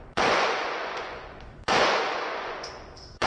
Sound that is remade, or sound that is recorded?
remade